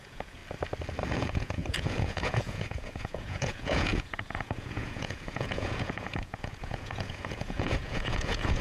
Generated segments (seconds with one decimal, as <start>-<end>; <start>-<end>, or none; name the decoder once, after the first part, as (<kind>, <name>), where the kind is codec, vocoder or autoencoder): 0.0-0.4 (vocoder, Vocos); 1.1-8.6